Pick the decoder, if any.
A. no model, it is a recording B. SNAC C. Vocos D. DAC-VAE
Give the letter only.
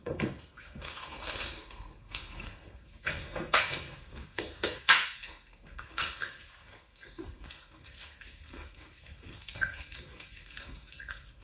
B